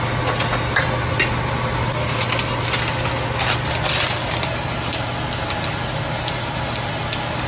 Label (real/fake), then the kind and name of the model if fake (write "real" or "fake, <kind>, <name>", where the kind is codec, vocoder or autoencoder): real